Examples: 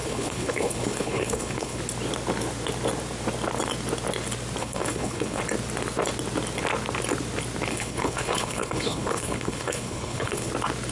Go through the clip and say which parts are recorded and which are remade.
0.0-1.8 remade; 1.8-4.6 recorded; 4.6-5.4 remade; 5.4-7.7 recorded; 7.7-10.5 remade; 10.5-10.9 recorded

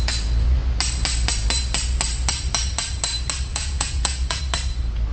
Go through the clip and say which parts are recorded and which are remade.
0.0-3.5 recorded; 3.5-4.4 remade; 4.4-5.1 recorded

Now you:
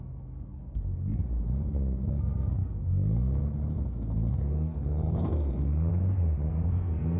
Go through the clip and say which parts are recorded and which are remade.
0.0-1.2 remade; 1.2-2.1 recorded; 2.1-3.4 remade; 3.4-4.3 recorded; 4.3-5.9 remade; 5.9-6.5 recorded; 6.5-7.2 remade

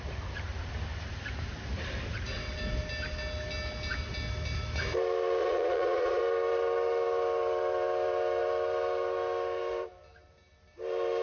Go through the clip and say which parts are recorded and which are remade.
0.0-5.4 recorded; 5.4-6.2 remade; 6.2-11.2 recorded

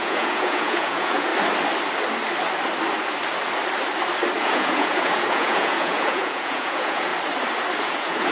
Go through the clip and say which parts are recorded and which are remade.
0.0-1.3 remade; 1.3-4.4 recorded; 4.4-7.1 remade; 7.1-7.8 recorded; 7.8-8.3 remade